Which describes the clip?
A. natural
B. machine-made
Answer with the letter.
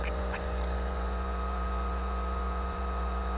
B